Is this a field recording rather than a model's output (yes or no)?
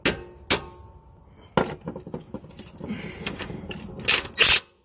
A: yes